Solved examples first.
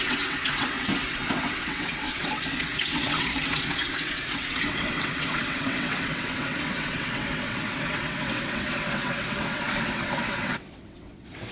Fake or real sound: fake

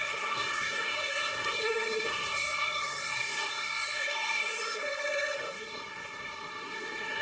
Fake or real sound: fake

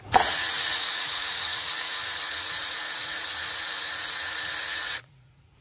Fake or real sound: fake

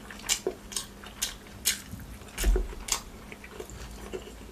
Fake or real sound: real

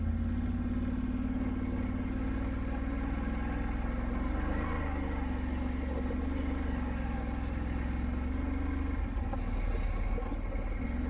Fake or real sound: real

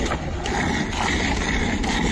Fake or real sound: real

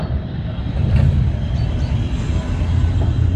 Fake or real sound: real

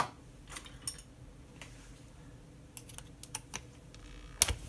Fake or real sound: real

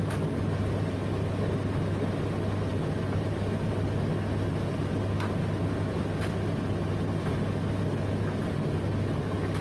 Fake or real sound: real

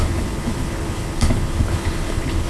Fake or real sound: fake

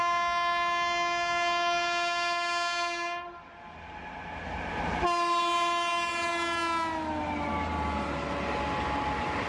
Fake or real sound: real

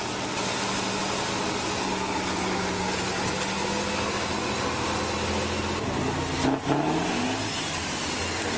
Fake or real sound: real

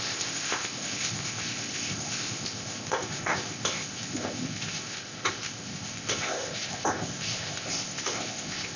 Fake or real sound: fake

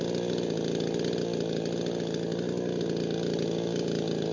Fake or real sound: real